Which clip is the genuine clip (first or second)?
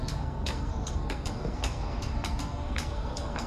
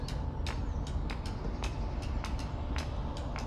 second